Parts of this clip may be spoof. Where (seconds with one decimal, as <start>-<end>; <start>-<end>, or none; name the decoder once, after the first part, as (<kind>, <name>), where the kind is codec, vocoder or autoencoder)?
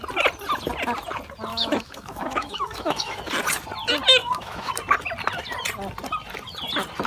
1.5-3.2 (autoencoder, DAC-VAE); 4.2-4.7